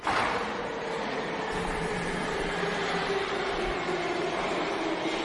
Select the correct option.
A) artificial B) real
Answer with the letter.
A